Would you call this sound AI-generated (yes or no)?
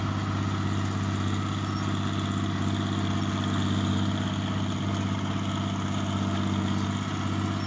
no